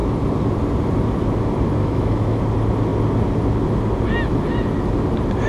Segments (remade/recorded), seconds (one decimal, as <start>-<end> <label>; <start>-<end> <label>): 0.0-1.8 recorded; 1.8-2.4 remade; 2.4-5.5 recorded